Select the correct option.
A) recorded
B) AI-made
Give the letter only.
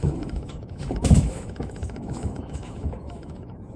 B